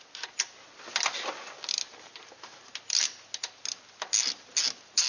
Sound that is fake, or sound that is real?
real